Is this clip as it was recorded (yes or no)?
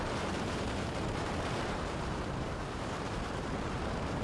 no